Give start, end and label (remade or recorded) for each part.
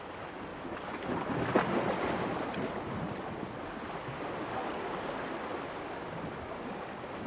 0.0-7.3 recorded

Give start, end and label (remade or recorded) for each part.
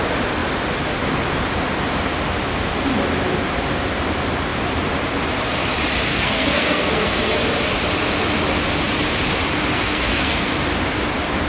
0.0-6.1 recorded; 6.1-7.4 remade; 7.4-9.7 recorded; 9.7-10.5 remade; 10.5-11.5 recorded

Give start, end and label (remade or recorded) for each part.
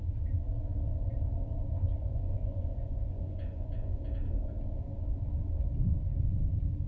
0.0-2.0 recorded; 2.0-4.0 remade; 4.0-6.9 recorded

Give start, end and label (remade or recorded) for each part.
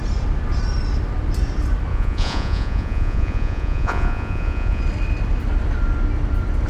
0.0-1.9 recorded; 1.9-4.8 remade; 4.8-6.7 recorded